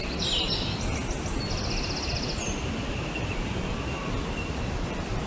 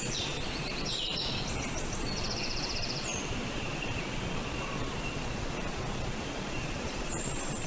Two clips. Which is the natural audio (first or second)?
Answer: first